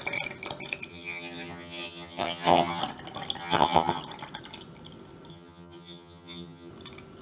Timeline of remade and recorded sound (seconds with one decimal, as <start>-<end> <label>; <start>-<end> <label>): 0.0-0.9 recorded; 0.9-2.8 remade; 2.8-3.4 recorded; 3.4-4.0 remade; 4.0-5.3 recorded; 5.3-6.7 remade; 6.7-7.2 recorded